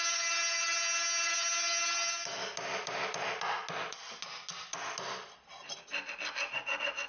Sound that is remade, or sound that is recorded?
recorded